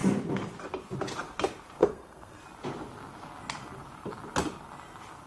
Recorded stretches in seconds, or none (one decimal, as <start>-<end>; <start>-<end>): 0.0-1.8; 2.4-5.3